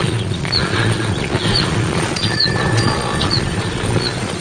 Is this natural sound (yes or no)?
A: no